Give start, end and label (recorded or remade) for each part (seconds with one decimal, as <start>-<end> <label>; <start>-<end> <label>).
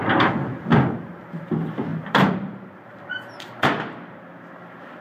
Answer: 0.0-0.7 recorded; 0.7-1.5 remade; 1.5-1.9 recorded; 1.9-3.7 remade; 3.7-5.0 recorded